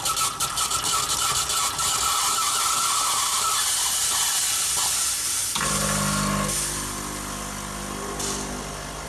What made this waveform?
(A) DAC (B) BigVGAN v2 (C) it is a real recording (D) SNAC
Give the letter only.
C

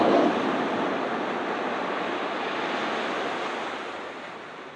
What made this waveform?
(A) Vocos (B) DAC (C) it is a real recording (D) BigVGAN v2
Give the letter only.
C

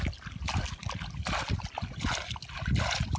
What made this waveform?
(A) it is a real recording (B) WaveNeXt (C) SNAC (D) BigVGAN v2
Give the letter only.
A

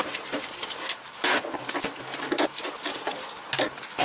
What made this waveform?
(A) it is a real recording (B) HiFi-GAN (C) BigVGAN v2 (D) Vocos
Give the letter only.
A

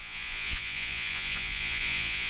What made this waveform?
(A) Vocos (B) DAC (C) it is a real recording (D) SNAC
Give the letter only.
A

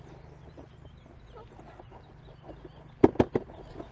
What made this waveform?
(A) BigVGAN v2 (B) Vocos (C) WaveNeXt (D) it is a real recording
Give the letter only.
D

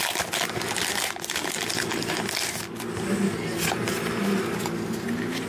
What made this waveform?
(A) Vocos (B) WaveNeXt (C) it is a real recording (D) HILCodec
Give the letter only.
C